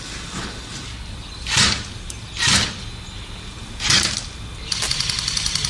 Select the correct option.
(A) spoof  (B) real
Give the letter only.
B